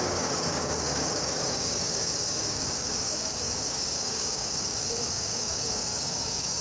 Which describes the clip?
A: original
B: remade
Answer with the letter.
B